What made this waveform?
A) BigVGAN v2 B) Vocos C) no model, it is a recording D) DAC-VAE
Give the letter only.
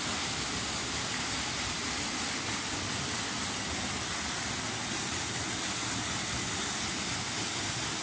C